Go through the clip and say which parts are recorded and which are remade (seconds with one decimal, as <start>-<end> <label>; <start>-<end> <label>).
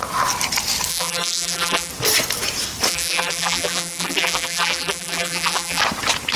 0.0-0.9 recorded; 0.9-1.9 remade; 1.9-2.9 recorded; 2.9-5.8 remade; 5.8-6.4 recorded